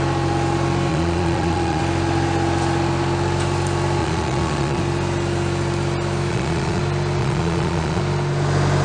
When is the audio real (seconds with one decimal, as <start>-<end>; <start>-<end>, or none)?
0.0-0.9; 1.8-4.0; 4.8-6.3; 6.8-7.2; 8.0-8.8